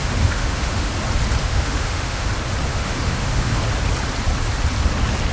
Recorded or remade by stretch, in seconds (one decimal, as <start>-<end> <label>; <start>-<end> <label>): 0.0-0.9 remade; 0.9-1.4 recorded; 1.4-2.3 remade; 2.3-2.7 recorded; 2.7-3.6 remade; 3.6-5.3 recorded